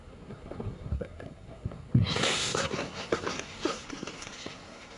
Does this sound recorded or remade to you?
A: remade